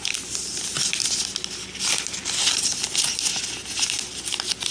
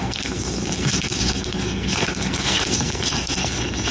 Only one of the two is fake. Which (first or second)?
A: second